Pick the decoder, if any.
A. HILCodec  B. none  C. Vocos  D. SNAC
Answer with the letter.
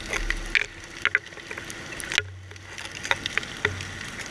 B